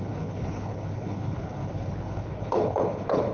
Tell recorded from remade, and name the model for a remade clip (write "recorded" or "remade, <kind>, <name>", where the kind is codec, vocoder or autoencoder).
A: remade, codec, HILCodec